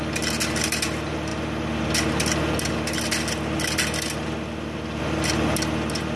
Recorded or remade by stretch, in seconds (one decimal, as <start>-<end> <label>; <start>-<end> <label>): 0.0-6.2 recorded